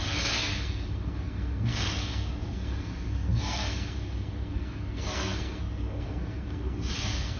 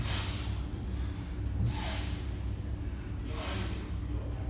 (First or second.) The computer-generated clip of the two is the first